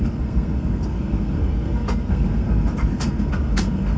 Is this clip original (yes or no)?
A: no